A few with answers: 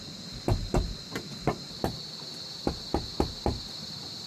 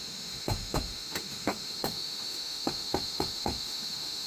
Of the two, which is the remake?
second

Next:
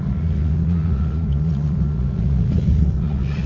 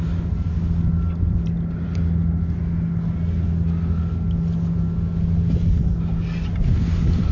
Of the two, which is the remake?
first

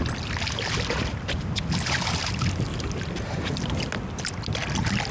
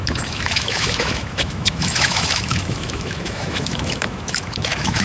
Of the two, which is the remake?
second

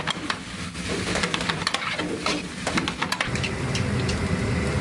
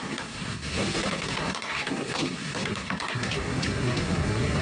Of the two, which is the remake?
second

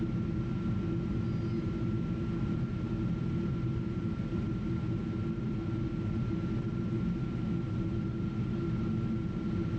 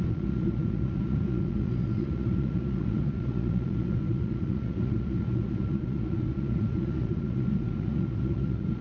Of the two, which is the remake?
second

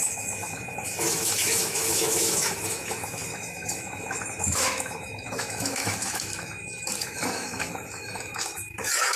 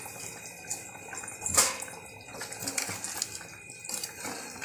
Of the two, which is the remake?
first